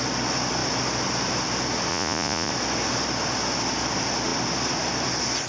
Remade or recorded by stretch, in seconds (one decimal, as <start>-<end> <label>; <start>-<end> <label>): 0.0-1.9 recorded; 1.9-2.5 remade; 2.5-5.5 recorded